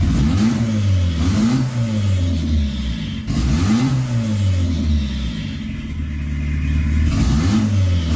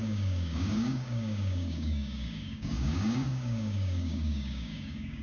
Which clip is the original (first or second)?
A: first